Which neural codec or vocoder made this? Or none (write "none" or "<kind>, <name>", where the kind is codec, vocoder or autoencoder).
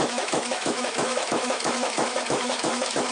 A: autoencoder, DAC-VAE